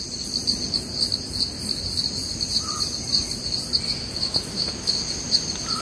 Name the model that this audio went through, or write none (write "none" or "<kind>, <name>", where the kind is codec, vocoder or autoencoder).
none